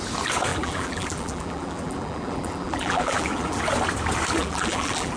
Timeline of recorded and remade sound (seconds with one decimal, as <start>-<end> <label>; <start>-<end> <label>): 0.0-0.5 recorded; 0.5-3.6 remade; 3.6-4.4 recorded; 4.4-5.2 remade